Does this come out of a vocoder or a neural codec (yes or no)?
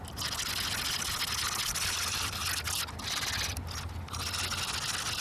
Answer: no